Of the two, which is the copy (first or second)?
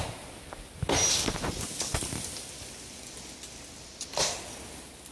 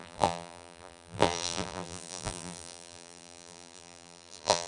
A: second